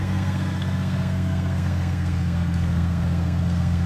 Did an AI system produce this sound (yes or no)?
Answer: yes